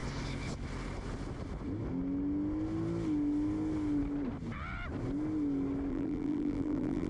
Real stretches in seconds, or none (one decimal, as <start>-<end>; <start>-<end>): 0.0-5.9